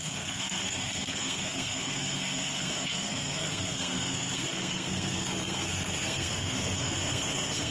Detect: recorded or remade remade